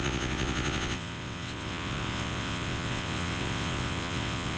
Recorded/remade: remade